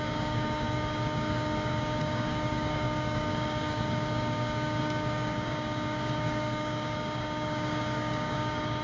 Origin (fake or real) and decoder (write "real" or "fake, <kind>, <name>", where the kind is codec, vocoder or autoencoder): fake, codec, DAC